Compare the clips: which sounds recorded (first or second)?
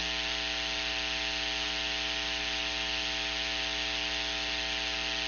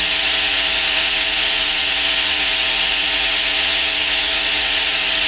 first